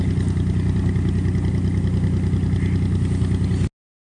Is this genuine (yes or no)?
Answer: yes